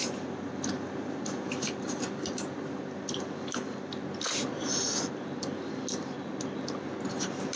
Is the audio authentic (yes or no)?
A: yes